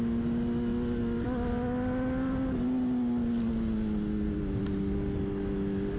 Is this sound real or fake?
real